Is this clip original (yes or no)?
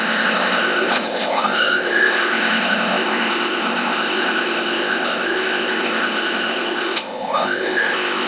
no